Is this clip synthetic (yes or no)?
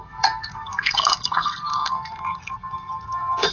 yes